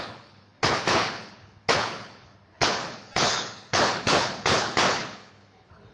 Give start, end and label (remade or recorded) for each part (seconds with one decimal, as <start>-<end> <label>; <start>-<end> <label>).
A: 0.0-5.9 remade